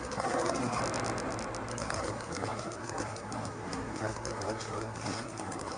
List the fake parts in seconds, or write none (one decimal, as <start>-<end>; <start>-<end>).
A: 0.0-0.8; 1.7-5.8